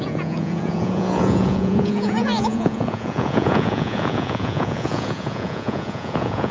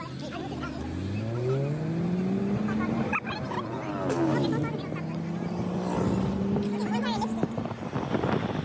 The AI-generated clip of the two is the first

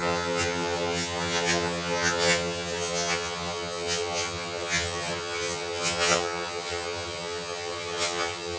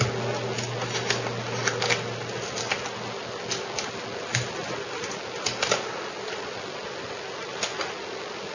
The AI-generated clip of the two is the first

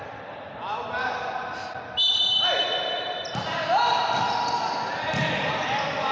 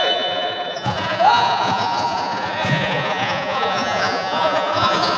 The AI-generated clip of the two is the second